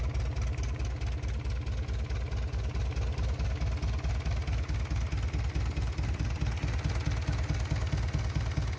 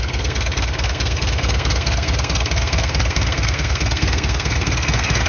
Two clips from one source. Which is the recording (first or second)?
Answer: first